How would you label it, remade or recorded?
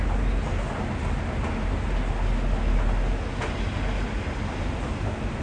recorded